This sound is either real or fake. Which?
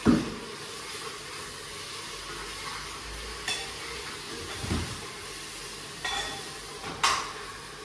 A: real